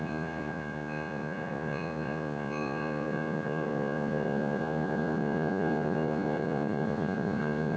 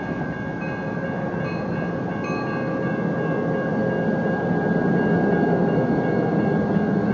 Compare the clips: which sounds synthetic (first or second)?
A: first